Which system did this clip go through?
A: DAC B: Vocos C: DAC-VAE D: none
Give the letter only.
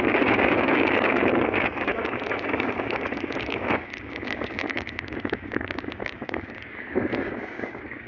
A